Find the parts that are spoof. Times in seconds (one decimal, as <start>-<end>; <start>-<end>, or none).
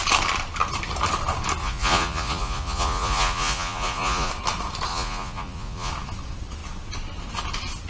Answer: 1.6-4.3; 4.9-5.9